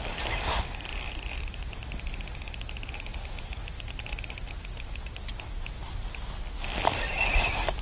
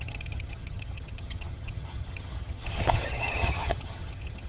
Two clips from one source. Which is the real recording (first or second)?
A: first